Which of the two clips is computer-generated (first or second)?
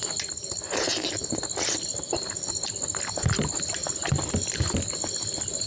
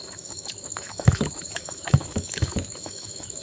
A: second